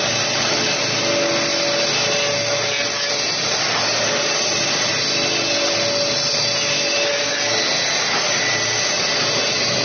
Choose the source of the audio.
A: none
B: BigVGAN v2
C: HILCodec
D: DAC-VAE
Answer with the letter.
A